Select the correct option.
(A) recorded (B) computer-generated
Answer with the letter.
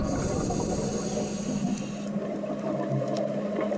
A